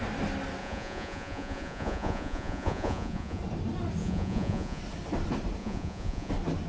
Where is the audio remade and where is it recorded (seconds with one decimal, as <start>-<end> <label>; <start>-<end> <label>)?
0.0-0.6 recorded; 0.6-3.4 remade; 3.4-4.0 recorded; 4.0-4.8 remade; 4.8-5.6 recorded; 5.6-6.3 remade; 6.3-6.7 recorded